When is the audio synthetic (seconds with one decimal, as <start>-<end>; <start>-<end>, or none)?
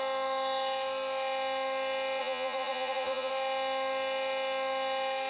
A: 2.2-3.3